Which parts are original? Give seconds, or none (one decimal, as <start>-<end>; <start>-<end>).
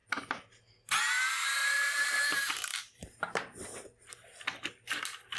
0.0-1.6; 2.3-2.7; 3.4-5.4